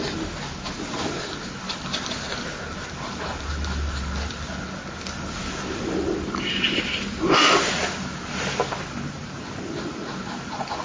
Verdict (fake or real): real